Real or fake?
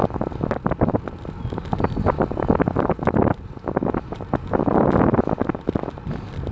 real